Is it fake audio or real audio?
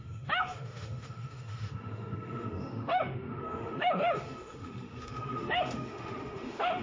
fake